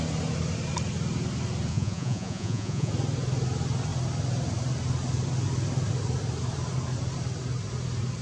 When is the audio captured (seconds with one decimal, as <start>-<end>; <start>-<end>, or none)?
0.0-1.7; 2.9-8.2